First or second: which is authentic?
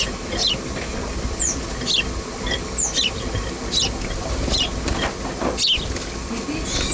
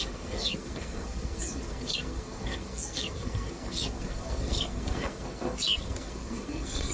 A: first